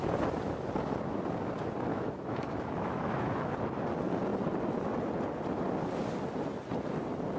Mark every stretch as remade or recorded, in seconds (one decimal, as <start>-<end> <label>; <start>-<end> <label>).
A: 0.0-1.9 recorded; 1.9-3.5 remade; 3.5-7.4 recorded